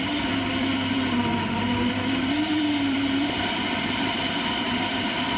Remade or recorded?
remade